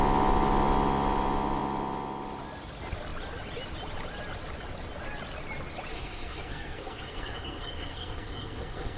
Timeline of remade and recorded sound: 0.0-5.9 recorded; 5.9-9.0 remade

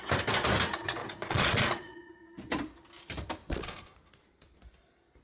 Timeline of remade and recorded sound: 0.0-1.0 recorded; 1.0-2.1 remade; 2.1-3.4 recorded; 3.4-4.6 remade; 4.6-5.2 recorded

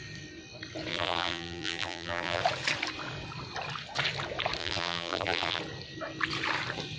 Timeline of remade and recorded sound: 0.0-0.9 recorded; 0.9-2.4 remade; 2.4-4.6 recorded; 4.6-5.6 remade; 5.6-7.0 recorded

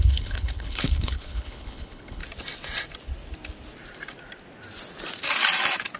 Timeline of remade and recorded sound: 0.0-2.2 remade; 2.2-6.0 recorded

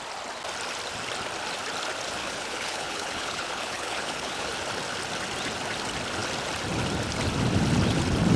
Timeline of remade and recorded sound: 0.0-2.2 recorded; 2.2-4.5 remade; 4.5-8.4 recorded

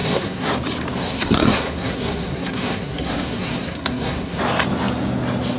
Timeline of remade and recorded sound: 0.0-0.5 remade; 0.5-1.0 recorded; 1.0-4.4 remade; 4.4-5.6 recorded

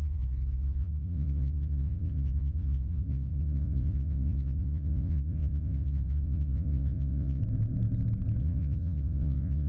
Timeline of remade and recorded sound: 0.0-7.4 remade; 7.4-8.4 recorded; 8.4-9.7 remade

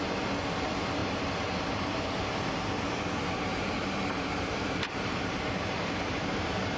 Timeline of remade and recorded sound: 0.0-1.0 recorded; 1.0-2.5 remade; 2.5-3.5 recorded; 3.5-6.8 remade